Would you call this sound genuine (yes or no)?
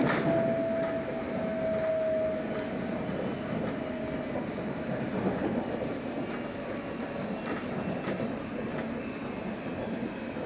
yes